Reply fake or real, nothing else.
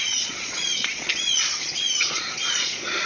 fake